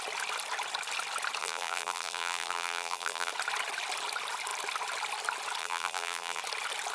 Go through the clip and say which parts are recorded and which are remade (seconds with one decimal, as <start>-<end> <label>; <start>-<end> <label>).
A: 0.0-1.4 recorded; 1.4-3.3 remade; 3.3-5.6 recorded; 5.6-6.4 remade; 6.4-6.9 recorded